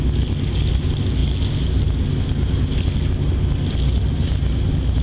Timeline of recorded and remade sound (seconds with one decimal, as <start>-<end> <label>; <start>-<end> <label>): 0.0-5.0 recorded